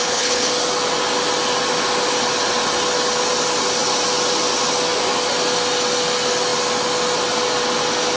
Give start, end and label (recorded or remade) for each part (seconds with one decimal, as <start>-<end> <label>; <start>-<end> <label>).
0.0-0.5 remade; 0.5-8.2 recorded